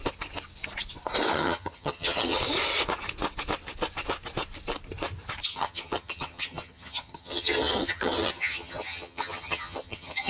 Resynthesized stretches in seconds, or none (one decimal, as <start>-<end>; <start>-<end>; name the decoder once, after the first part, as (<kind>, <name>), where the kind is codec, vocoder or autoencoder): 1.3-2.4 (vocoder, HiFi-GAN); 5.5-10.3